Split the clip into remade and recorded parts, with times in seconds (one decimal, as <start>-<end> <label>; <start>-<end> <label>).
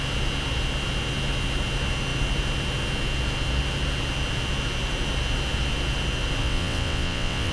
0.0-6.4 recorded; 6.4-7.5 remade